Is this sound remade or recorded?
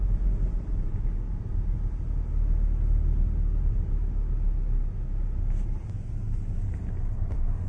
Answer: recorded